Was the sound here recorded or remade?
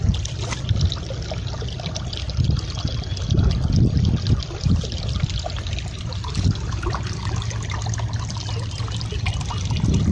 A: recorded